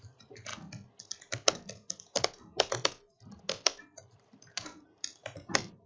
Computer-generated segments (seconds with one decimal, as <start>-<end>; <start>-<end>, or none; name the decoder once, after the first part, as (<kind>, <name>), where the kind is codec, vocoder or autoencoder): 0.0-0.5 (vocoder, BigVGAN v2); 4.0-5.9

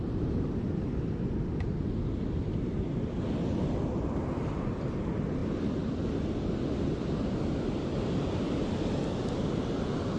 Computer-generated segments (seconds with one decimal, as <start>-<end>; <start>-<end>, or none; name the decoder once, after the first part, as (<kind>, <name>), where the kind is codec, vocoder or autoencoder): none

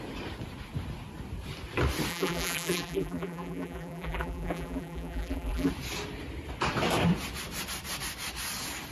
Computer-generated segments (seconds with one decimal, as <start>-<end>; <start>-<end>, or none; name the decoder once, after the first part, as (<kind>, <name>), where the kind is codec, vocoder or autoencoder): 2.1-5.7 (vocoder, BigVGAN v2)

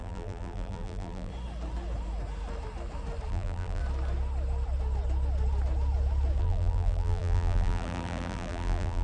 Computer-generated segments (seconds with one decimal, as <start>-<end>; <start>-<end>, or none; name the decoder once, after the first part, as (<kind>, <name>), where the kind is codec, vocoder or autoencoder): 0.0-1.3 (vocoder, BigVGAN v2); 3.3-3.8; 6.4-9.0

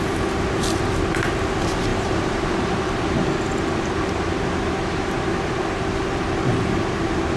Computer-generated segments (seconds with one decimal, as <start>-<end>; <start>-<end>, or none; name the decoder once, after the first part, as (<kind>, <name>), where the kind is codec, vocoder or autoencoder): 1.9-5.6 (vocoder, BigVGAN v2)